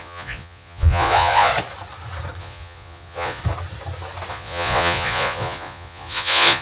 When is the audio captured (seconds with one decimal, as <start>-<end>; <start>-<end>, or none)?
1.5-2.4; 3.4-4.3